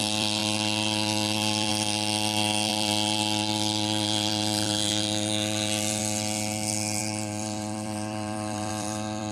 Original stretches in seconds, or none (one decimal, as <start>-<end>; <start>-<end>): none